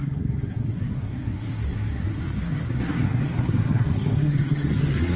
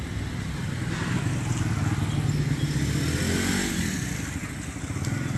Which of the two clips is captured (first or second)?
second